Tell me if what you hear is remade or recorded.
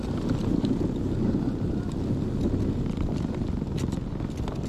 recorded